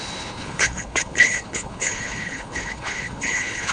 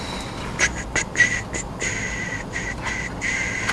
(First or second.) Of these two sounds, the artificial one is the first